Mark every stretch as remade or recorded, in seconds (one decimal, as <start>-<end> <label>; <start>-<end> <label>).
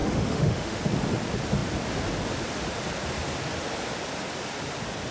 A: 0.0-0.8 remade; 0.8-5.1 recorded